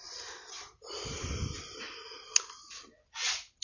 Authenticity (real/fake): real